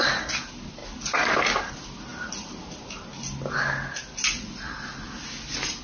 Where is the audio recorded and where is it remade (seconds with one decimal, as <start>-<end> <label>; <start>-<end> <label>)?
0.0-5.8 recorded